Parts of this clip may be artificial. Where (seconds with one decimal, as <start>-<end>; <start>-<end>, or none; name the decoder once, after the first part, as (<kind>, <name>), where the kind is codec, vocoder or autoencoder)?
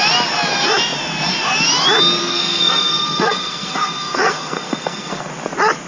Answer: 2.2-5.3 (codec, SNAC)